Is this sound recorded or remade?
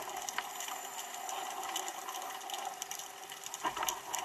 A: recorded